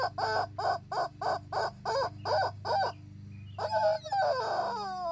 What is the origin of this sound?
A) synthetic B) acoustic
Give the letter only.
B